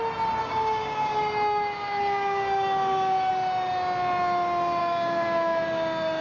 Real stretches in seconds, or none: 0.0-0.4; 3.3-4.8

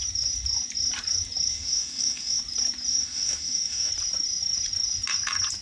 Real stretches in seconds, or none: 0.0-1.5; 2.4-2.9; 3.9-5.6

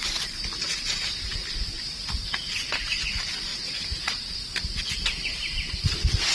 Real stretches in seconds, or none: 0.0-6.3

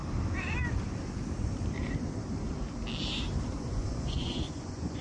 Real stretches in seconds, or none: 0.0-3.6